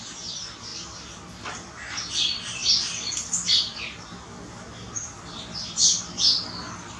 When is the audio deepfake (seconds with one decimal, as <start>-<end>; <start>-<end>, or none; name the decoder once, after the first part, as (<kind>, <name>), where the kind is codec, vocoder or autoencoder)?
none